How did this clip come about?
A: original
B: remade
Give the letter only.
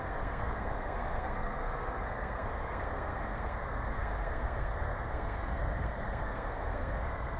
B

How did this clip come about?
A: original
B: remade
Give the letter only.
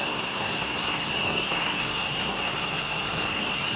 B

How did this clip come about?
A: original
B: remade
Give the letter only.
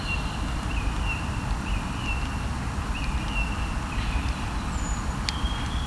A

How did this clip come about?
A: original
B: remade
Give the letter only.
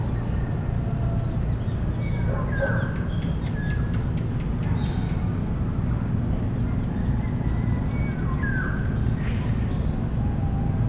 A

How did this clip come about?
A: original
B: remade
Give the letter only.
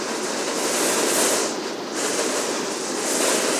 A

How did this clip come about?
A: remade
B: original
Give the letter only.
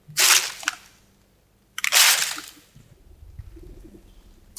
B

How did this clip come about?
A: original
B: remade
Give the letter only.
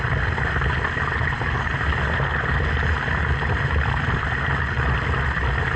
A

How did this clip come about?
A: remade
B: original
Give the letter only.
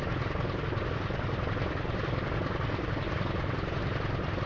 B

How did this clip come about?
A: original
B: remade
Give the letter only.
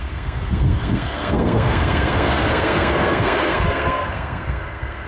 B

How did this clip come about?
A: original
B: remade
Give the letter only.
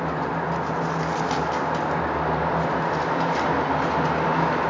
A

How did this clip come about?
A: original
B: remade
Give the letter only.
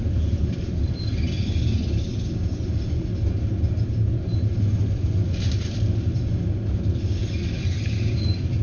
A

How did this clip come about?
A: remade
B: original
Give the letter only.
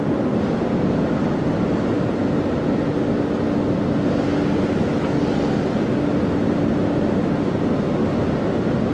B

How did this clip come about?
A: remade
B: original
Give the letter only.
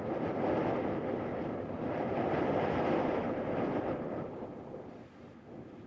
B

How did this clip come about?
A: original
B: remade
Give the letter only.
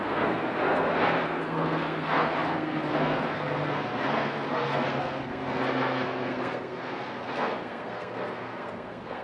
B